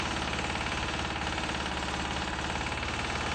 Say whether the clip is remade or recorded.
recorded